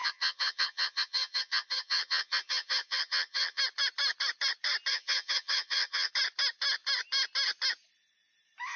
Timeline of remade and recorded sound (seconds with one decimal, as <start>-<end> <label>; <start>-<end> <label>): 0.0-3.6 remade; 3.6-4.9 recorded; 4.9-6.1 remade; 6.1-8.8 recorded